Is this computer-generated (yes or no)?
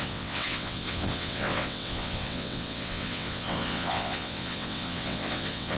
yes